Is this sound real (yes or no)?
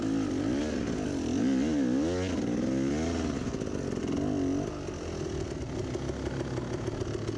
yes